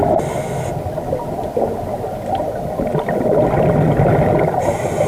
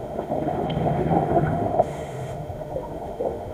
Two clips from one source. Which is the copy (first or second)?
second